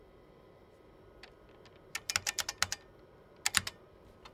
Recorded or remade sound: recorded